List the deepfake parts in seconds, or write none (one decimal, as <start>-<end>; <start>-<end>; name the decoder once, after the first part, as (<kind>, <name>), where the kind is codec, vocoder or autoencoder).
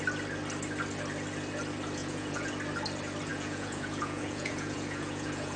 2.0-2.5 (vocoder, Vocos); 3.3-5.6